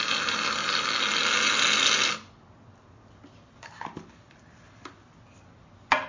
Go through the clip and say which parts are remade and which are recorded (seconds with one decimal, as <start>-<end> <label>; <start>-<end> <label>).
0.0-6.1 recorded